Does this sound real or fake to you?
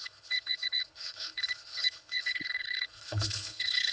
fake